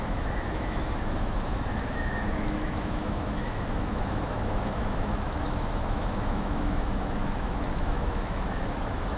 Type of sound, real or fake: fake